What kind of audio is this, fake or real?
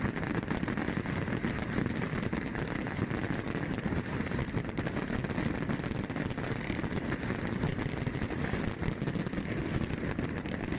real